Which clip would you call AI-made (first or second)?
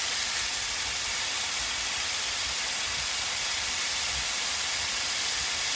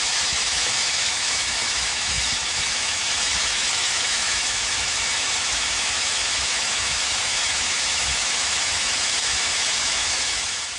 second